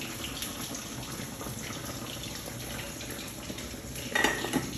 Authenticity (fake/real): real